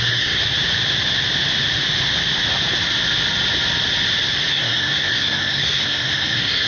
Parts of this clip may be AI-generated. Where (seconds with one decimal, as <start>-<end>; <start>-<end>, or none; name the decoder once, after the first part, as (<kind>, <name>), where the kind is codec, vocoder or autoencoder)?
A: 0.0-0.5 (codec, SNAC); 4.5-6.7